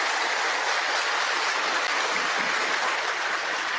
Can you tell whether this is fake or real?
real